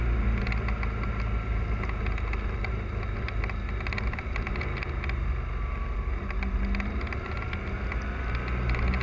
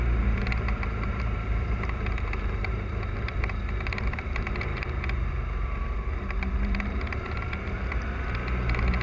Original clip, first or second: first